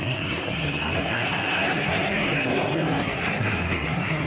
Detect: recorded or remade remade